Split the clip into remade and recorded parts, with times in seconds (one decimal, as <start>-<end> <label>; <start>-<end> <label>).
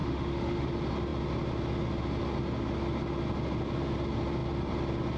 0.0-0.7 remade; 0.7-5.2 recorded